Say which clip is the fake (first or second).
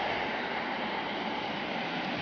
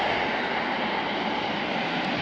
first